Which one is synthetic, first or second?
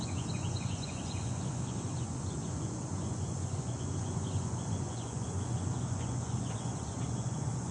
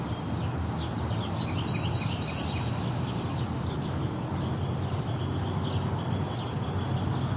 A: first